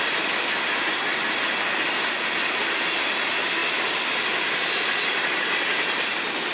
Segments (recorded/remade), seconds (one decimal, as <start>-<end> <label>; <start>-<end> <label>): 0.0-6.5 recorded